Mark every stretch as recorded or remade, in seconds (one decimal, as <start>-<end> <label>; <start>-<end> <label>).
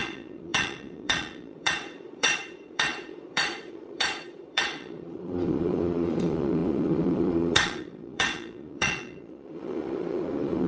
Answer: 0.0-10.7 remade